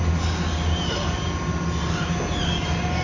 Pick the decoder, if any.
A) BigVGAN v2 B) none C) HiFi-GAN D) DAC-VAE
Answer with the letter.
B